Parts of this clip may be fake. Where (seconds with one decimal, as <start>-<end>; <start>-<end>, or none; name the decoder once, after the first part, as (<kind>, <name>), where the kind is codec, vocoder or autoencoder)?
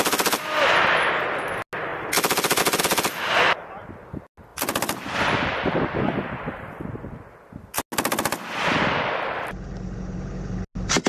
4.5-5.2 (vocoder, BigVGAN v2)